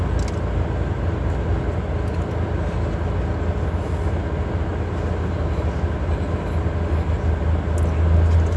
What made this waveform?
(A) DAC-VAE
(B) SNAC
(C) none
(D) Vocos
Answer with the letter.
C